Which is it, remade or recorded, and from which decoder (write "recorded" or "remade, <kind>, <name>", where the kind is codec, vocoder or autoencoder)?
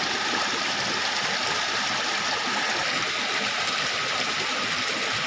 recorded